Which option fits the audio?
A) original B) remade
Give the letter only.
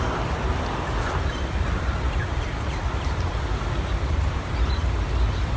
B